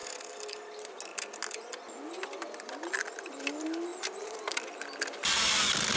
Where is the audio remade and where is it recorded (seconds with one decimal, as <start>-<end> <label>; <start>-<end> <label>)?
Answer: 0.0-3.9 recorded; 3.9-4.4 remade; 4.4-6.0 recorded